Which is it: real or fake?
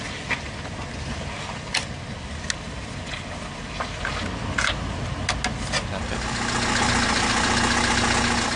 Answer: real